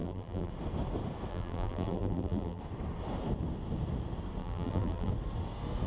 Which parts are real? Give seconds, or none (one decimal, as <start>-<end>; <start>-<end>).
0.5-1.3; 2.6-4.4; 5.1-5.9